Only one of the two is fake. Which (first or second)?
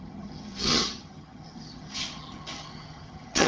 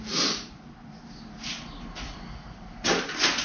first